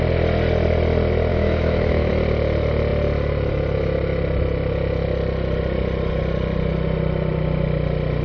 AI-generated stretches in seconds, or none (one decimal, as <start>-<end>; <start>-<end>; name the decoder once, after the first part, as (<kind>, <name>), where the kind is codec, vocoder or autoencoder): 1.3-2.1 (autoencoder, DAC-VAE)